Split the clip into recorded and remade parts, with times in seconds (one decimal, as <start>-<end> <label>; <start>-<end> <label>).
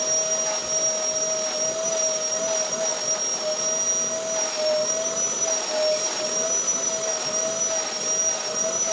0.0-8.9 recorded